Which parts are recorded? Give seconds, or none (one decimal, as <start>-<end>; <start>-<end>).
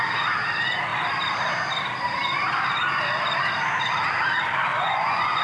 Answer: 0.0-4.7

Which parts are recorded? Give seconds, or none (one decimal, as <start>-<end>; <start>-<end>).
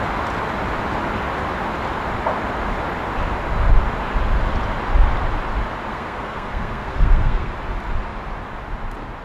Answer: 0.0-5.9; 7.5-9.2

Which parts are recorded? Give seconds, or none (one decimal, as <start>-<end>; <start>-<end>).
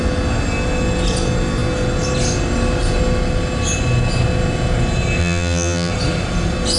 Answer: 0.0-5.2; 5.9-6.8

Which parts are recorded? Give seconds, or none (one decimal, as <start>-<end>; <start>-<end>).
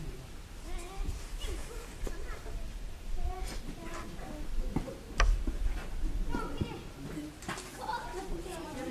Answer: 0.0-1.6; 3.4-8.9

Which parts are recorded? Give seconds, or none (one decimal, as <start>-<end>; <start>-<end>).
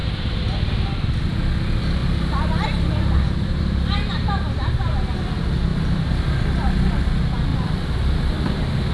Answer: 0.9-2.0; 4.5-5.7; 6.4-7.5